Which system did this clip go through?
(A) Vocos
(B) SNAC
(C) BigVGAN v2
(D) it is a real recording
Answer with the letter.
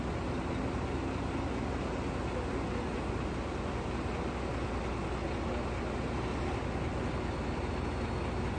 D